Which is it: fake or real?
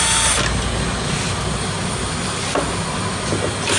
real